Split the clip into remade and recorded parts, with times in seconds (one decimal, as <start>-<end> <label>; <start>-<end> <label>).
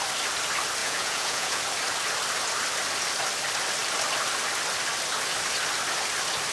0.0-0.8 recorded; 0.8-1.6 remade; 1.6-6.5 recorded